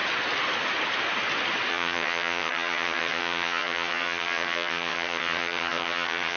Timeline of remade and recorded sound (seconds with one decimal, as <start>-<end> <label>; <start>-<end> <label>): 0.0-1.7 recorded; 1.7-6.4 remade